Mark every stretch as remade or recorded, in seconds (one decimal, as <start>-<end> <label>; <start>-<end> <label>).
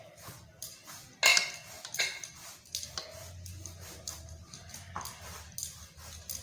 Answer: 0.0-6.4 recorded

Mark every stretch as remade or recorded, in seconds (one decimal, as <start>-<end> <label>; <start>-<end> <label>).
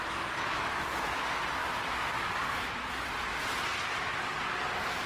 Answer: 0.0-0.5 recorded; 0.5-1.2 remade; 1.2-1.6 recorded; 1.6-2.9 remade; 2.9-5.1 recorded